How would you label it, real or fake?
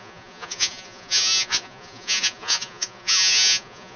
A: fake